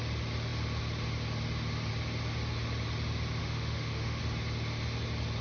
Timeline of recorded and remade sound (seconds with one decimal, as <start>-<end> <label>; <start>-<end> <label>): 0.0-3.4 recorded; 3.4-4.2 remade; 4.2-5.4 recorded